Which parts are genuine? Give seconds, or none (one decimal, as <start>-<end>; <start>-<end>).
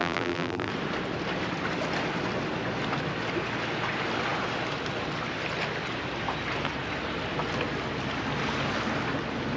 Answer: 0.7-9.6